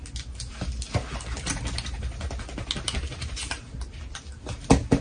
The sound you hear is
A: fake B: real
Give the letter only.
B